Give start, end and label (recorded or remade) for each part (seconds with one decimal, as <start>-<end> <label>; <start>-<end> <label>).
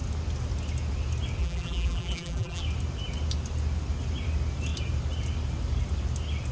0.0-1.4 recorded; 1.4-2.6 remade; 2.6-6.5 recorded